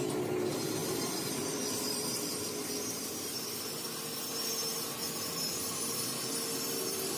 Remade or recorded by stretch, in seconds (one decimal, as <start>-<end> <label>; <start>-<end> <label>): 0.0-0.8 recorded; 0.8-4.0 remade; 4.0-4.7 recorded; 4.7-6.3 remade; 6.3-7.2 recorded